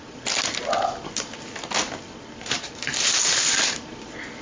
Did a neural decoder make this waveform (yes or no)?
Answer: no